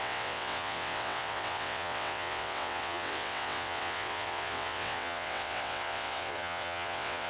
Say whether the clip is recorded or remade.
remade